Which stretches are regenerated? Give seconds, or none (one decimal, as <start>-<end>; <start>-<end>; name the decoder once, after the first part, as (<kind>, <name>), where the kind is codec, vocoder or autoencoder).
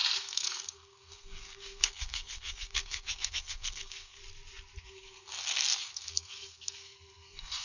0.0-4.2 (codec, SNAC); 4.8-7.6